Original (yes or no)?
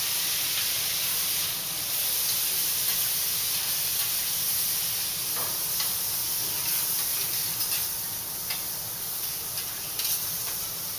yes